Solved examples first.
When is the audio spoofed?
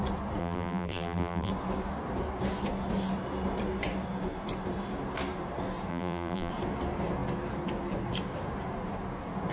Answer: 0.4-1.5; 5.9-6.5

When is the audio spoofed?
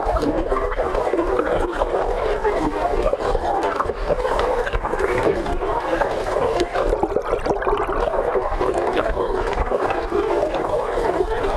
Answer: 0.0-6.9; 8.0-11.6